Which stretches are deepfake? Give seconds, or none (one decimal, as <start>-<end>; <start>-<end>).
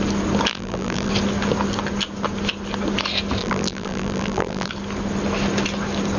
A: 0.5-1.1; 3.4-4.7